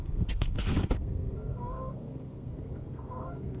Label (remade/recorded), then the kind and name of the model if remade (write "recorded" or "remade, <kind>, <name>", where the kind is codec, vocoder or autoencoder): remade, codec, SNAC